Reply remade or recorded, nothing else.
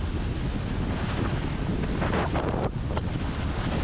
recorded